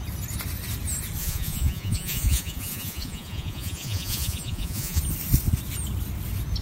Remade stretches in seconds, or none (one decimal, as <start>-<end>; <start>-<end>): 1.2-5.0